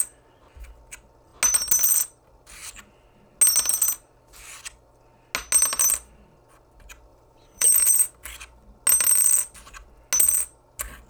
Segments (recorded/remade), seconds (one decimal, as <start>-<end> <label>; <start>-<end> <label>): 0.0-7.1 recorded; 7.1-8.1 remade; 8.1-11.1 recorded